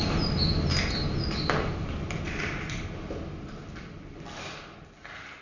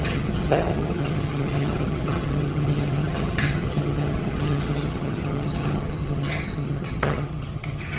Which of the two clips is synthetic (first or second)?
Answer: second